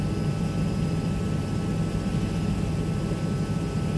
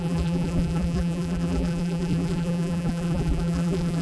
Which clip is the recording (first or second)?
first